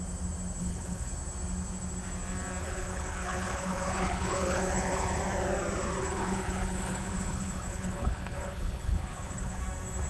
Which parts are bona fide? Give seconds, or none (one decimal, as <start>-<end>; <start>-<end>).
0.0-0.6; 1.1-2.6; 5.2-6.0; 9.6-10.1